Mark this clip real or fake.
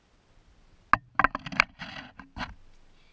real